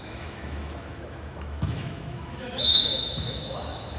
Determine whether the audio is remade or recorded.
remade